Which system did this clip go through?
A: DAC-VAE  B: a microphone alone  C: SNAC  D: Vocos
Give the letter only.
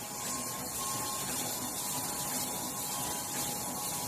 B